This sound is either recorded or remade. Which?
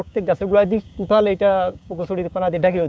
remade